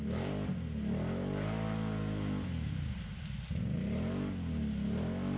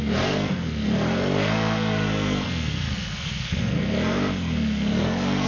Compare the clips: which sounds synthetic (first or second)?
second